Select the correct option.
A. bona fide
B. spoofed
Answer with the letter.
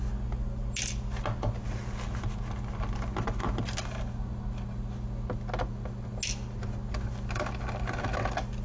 A